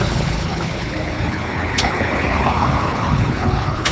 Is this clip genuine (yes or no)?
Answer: no